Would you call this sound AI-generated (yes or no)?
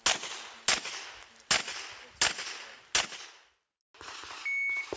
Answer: no